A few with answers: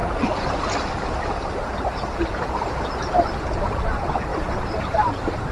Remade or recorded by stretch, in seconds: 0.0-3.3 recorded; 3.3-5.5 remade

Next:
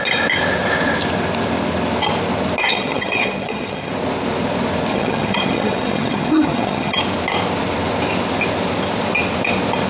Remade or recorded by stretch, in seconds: 0.0-2.6 recorded; 2.6-3.9 remade; 3.9-4.9 recorded; 4.9-7.0 remade; 7.0-9.9 recorded

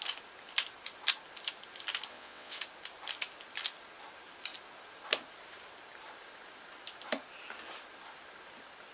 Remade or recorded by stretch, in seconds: 0.0-2.1 recorded; 2.1-2.6 remade; 2.6-8.9 recorded

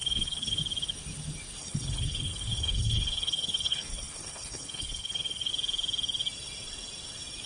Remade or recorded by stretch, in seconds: 0.0-0.6 remade; 0.6-1.6 recorded; 1.6-5.5 remade; 5.5-7.5 recorded